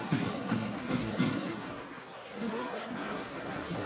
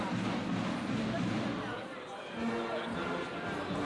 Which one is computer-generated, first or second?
first